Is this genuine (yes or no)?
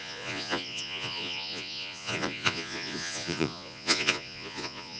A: no